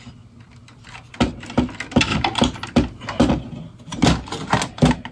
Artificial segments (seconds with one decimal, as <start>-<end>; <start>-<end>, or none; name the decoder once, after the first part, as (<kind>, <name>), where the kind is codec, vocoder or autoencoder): none